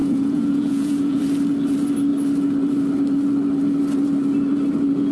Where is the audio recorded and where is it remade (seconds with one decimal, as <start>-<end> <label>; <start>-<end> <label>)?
0.0-1.2 remade; 1.2-5.1 recorded